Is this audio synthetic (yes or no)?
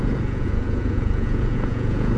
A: yes